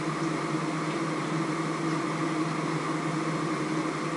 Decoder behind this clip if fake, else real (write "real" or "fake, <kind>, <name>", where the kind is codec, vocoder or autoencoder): real